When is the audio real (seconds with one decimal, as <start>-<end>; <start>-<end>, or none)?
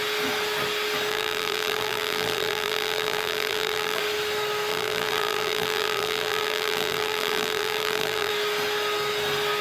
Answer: 0.0-1.1; 4.0-4.7; 8.3-9.6